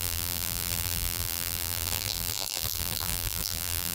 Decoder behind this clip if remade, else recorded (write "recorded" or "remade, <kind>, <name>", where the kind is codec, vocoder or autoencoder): remade, vocoder, BigVGAN v2